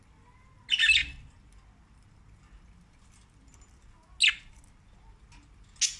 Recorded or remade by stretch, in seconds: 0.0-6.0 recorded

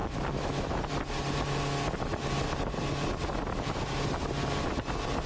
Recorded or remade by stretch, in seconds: 0.0-0.9 remade; 0.9-5.3 recorded

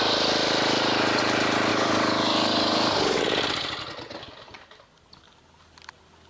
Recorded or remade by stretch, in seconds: 0.0-1.7 recorded; 1.7-3.2 remade; 3.2-6.3 recorded

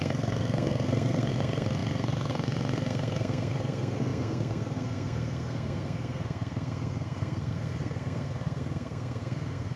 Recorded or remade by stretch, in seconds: 0.0-9.8 remade

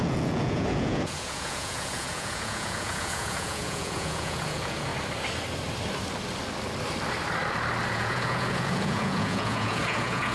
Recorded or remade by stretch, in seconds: 0.0-4.9 remade; 4.9-7.9 recorded; 7.9-10.3 remade